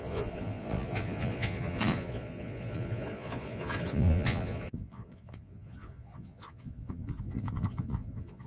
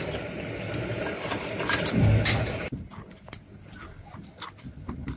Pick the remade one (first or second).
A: first